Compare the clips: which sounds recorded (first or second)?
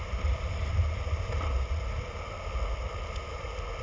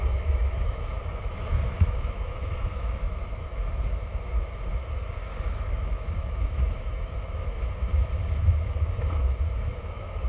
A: first